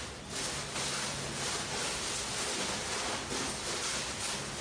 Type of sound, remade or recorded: recorded